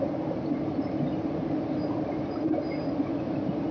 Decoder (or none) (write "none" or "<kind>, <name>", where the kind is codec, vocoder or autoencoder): none